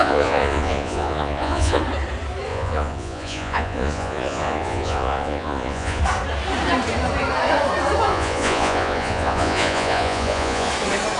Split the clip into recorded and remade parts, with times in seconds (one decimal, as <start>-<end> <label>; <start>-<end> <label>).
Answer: 0.0-1.8 remade; 1.8-2.5 recorded; 2.5-6.0 remade; 6.0-8.1 recorded; 8.1-10.7 remade; 10.7-11.2 recorded